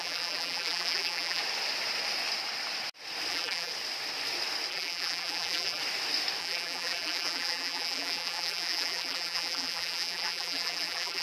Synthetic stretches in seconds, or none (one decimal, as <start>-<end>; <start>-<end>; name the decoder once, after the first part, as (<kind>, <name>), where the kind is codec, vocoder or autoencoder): 0.0-1.4 (vocoder, BigVGAN v2); 3.3-3.7; 4.7-5.8; 6.4-11.2

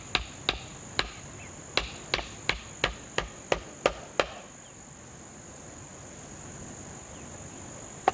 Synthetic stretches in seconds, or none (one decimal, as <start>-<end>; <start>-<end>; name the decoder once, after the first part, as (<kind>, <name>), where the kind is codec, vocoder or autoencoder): 0.7-1.4 (vocoder, BigVGAN v2)

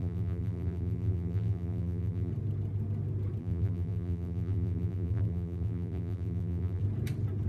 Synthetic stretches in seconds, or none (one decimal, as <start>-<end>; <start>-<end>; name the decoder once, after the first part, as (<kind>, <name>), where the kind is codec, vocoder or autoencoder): 0.0-2.3 (vocoder, BigVGAN v2); 3.4-6.8

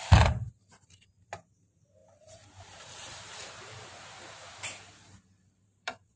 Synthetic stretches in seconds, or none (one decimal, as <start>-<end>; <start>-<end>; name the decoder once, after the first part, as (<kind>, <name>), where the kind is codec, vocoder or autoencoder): 0.0-6.2 (vocoder, BigVGAN v2)

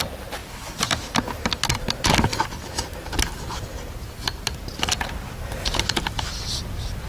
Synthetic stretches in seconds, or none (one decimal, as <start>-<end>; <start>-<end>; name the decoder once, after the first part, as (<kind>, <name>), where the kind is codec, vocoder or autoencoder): 0.4-1.6 (vocoder, BigVGAN v2)

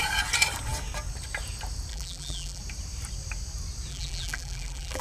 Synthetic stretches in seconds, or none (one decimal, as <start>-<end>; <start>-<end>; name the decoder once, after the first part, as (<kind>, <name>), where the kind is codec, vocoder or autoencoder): 1.9-2.6 (vocoder, BigVGAN v2); 3.9-5.0